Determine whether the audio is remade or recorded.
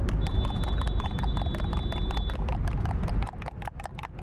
recorded